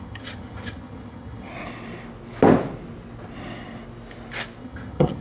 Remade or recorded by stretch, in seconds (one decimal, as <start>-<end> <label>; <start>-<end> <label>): 0.0-1.5 remade; 1.5-4.6 recorded; 4.6-5.2 remade